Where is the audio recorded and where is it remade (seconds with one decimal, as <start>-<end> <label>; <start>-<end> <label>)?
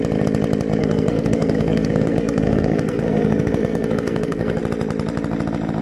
0.0-0.8 recorded; 0.8-4.6 remade; 4.6-5.8 recorded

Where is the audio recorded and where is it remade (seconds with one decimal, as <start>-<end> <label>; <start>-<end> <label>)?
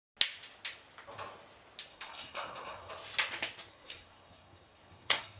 0.0-1.9 recorded; 1.9-2.9 remade; 2.9-3.7 recorded; 3.7-5.4 remade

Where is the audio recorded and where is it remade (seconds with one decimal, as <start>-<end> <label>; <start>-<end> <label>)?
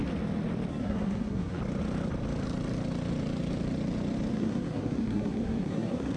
0.0-0.7 recorded; 0.7-1.6 remade; 1.6-4.3 recorded; 4.3-6.2 remade